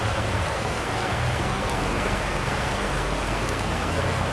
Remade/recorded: remade